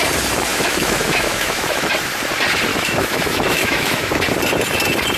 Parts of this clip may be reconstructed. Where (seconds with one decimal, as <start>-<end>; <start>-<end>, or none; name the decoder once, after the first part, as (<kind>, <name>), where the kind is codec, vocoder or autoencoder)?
0.5-1.9 (autoencoder, DAC-VAE); 2.7-4.1